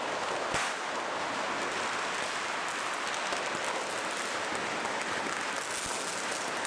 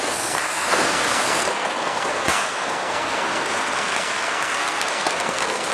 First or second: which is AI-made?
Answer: second